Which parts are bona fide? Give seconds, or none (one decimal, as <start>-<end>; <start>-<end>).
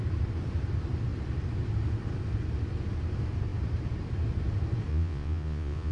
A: 0.0-4.9